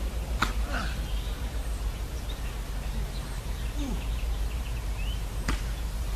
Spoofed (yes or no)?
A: yes